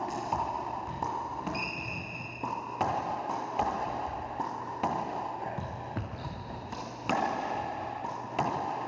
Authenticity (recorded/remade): recorded